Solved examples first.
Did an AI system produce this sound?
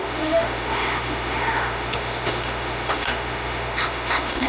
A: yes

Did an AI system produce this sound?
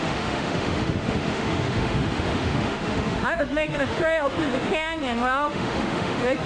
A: yes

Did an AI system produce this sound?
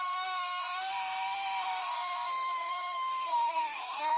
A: yes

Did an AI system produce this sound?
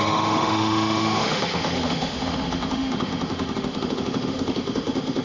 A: yes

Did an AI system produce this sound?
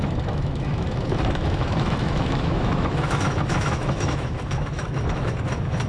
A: yes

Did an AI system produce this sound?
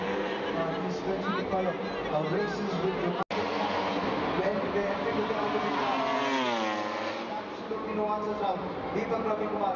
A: no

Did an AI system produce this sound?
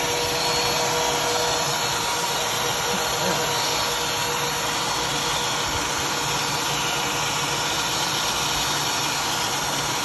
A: no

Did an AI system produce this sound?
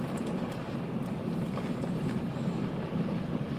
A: no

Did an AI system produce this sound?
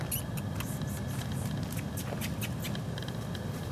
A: no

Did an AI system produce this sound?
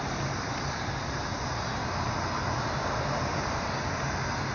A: no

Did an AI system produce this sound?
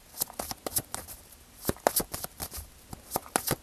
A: no